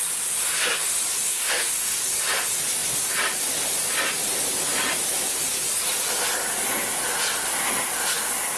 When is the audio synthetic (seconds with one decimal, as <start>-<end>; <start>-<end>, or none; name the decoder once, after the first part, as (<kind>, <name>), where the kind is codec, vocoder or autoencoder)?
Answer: 1.3-2.0 (codec, DAC)